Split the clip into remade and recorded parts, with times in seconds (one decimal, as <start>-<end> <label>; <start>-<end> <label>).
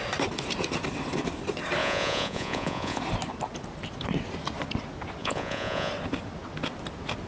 0.0-1.8 recorded; 1.8-3.0 remade; 3.0-5.2 recorded; 5.2-5.9 remade; 5.9-7.3 recorded